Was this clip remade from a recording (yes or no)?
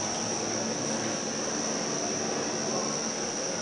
no